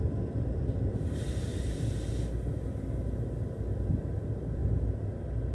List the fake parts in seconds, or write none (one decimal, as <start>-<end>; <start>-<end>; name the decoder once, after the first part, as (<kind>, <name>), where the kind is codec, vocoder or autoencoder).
0.0-1.5 (vocoder, BigVGAN v2); 4.0-4.6